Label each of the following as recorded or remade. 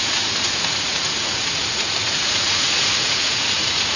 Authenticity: remade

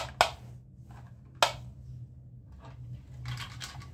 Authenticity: recorded